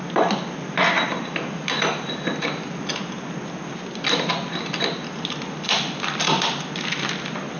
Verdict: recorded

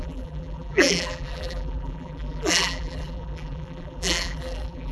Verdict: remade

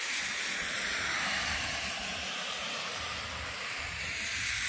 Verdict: remade